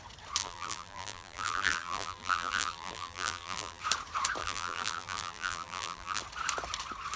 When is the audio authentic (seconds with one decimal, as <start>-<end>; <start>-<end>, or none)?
0.0-0.4; 3.8-4.4; 6.2-7.2